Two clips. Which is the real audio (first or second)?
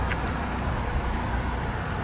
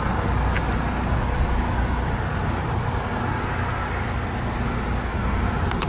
second